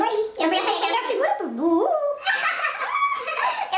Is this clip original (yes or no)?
yes